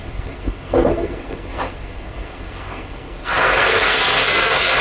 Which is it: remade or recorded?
remade